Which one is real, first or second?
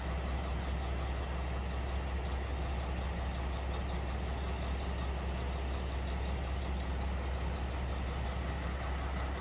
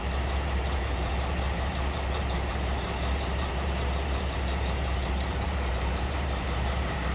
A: first